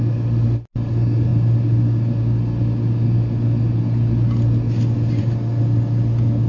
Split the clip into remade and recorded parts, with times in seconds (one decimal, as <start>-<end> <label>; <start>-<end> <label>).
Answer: 0.0-6.5 recorded